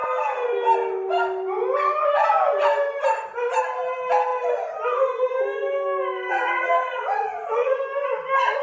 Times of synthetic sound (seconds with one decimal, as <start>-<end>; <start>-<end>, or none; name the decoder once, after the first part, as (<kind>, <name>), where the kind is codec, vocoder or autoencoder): 6.3-7.8 (vocoder, Vocos)